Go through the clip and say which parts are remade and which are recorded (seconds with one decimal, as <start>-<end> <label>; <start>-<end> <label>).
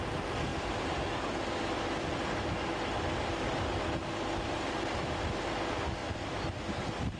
0.0-7.2 recorded